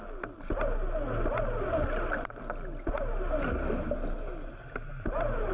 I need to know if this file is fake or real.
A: real